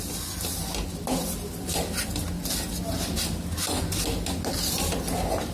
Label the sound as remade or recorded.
recorded